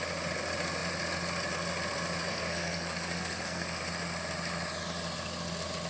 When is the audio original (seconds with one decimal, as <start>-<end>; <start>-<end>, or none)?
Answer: 0.0-2.3; 3.8-5.9